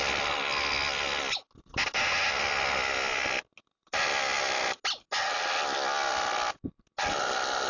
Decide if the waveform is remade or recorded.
recorded